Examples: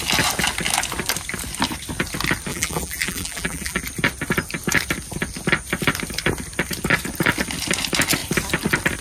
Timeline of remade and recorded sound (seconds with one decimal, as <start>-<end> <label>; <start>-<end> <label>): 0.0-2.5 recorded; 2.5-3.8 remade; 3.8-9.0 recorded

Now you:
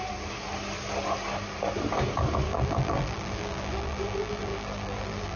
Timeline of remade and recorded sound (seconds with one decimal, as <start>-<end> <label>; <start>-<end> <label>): 0.0-2.5 recorded; 2.5-5.4 remade

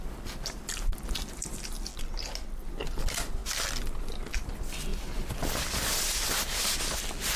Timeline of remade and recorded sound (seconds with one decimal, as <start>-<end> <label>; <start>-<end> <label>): 0.0-1.9 remade; 1.9-3.0 recorded; 3.0-3.4 remade; 3.4-4.0 recorded; 4.0-4.9 remade; 4.9-7.0 recorded; 7.0-7.4 remade

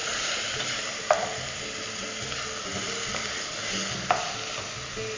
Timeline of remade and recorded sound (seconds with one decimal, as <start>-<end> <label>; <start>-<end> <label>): 0.0-1.0 remade; 1.0-5.2 recorded